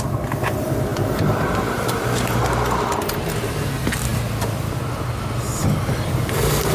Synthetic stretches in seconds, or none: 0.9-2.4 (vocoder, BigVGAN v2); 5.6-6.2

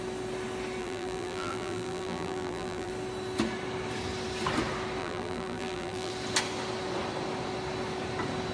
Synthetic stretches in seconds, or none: 0.8-2.9 (vocoder, BigVGAN v2); 5.0-6.1

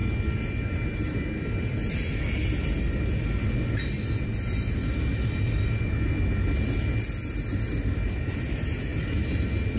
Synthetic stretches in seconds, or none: none

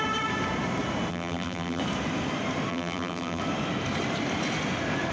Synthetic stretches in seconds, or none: 1.1-1.8 (vocoder, BigVGAN v2); 2.7-3.4